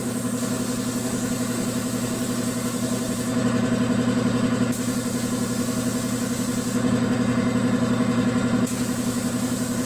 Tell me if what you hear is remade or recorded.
recorded